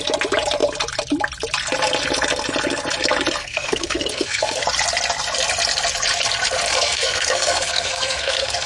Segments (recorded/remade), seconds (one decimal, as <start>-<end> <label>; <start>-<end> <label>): 0.0-3.4 recorded; 3.4-4.6 remade; 4.6-6.7 recorded; 6.7-8.7 remade